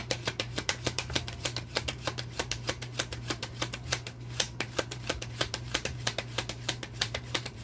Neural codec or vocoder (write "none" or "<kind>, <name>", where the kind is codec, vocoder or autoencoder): vocoder, BigVGAN v2